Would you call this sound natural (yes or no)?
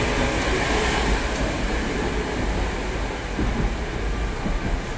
yes